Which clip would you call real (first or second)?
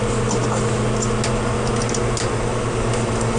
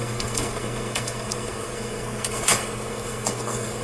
first